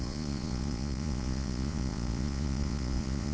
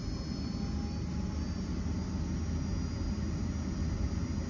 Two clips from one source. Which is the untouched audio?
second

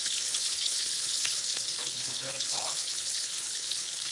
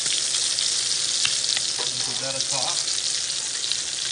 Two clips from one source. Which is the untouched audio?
second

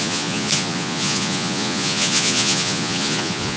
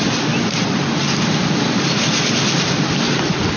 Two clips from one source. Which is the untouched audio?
second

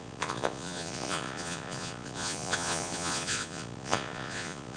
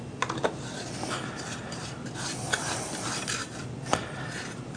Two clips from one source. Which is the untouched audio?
second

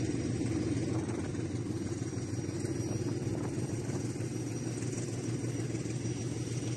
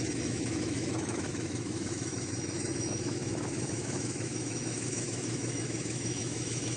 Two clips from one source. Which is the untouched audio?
first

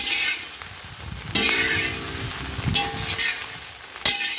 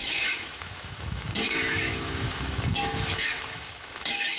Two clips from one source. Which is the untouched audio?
first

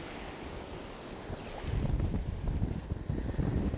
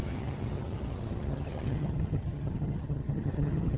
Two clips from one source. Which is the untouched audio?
first